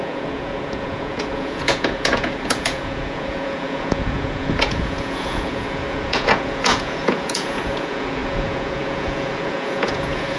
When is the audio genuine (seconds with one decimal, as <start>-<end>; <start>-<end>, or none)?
none